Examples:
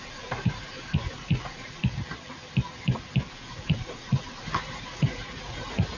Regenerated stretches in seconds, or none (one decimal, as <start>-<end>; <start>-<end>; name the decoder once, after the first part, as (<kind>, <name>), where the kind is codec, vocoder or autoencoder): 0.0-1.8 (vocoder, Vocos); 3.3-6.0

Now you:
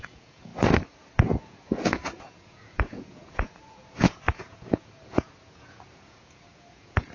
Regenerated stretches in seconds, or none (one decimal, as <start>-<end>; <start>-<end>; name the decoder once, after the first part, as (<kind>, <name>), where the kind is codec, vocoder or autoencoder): 0.0-0.5 (vocoder, Vocos); 1.0-7.1

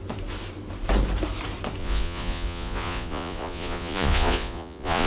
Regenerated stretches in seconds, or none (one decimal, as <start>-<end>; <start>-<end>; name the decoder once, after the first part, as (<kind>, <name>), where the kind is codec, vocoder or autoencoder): 1.8-5.1 (vocoder, Vocos)

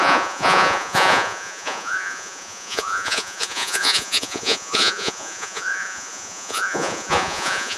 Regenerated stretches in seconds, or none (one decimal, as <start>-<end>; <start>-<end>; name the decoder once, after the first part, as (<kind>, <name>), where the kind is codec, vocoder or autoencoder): 0.0-7.8 (vocoder, Vocos)

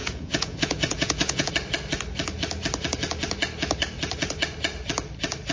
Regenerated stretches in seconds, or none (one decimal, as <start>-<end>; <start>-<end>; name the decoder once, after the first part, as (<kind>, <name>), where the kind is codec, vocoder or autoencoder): 0.0-1.5 (vocoder, Vocos)

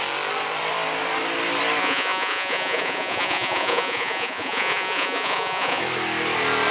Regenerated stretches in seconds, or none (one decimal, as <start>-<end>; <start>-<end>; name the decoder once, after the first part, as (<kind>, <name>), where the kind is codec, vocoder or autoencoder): 1.8-5.8 (vocoder, Vocos)

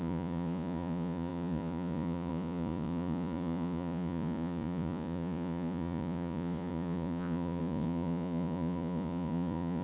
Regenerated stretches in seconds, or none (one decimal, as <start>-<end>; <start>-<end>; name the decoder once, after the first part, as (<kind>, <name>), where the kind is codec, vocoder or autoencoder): 0.0-9.8 (vocoder, Vocos)

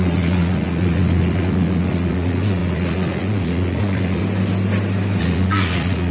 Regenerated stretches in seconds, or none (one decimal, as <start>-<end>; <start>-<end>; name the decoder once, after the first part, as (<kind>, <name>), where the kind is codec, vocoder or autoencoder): 0.0-4.2 (vocoder, Vocos); 5.2-6.1